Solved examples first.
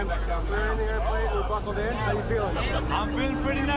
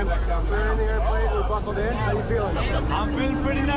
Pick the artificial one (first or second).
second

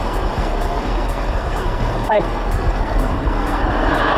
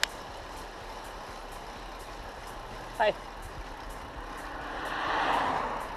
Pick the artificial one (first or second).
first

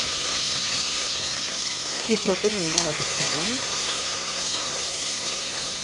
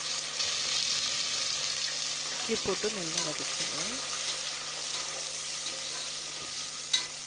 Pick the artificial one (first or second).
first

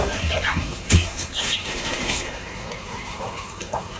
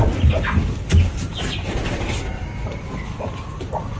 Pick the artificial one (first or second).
first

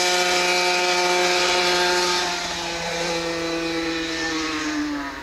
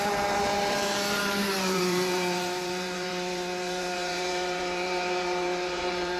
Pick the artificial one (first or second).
second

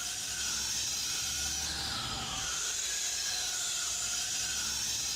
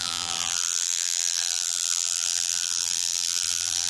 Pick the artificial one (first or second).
second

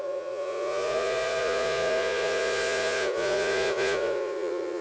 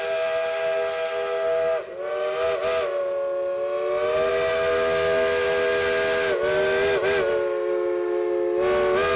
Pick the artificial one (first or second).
first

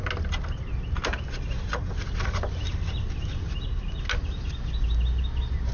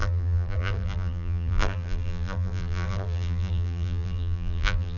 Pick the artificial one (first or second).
second